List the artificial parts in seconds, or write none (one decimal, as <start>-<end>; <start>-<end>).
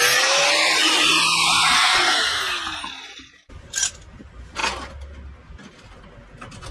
none